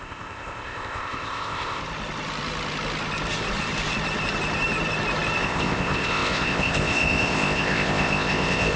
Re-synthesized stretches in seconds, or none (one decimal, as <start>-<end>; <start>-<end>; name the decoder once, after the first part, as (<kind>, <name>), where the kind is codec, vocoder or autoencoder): 0.0-1.8 (codec, ZipCodec); 5.4-8.8